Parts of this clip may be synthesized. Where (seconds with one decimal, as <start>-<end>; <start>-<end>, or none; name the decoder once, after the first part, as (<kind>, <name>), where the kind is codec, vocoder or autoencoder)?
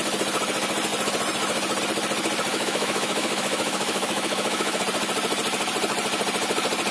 2.5-4.8 (autoencoder, DAC-VAE)